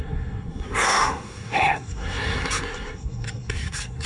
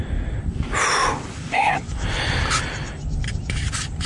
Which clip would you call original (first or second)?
second